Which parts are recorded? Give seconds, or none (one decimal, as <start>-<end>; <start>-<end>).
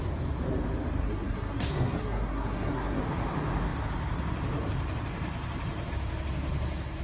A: 0.0-1.0; 3.0-7.0